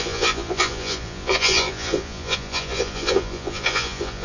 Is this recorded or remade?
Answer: remade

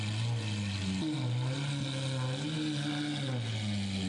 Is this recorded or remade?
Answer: recorded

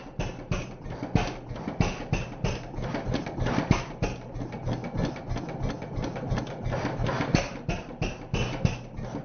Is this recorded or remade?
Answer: recorded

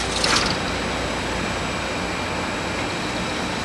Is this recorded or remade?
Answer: recorded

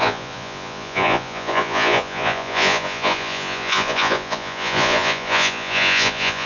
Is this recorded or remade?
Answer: remade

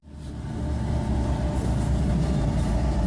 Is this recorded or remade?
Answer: remade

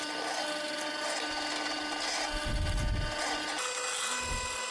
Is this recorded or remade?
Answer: recorded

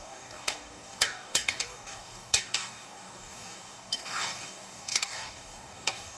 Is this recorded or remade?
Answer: remade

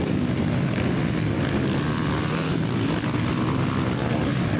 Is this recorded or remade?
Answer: recorded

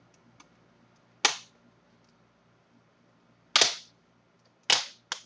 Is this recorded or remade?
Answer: recorded